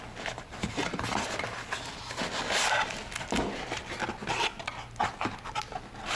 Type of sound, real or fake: real